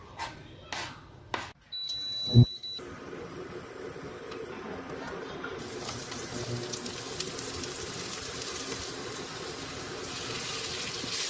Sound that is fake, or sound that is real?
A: real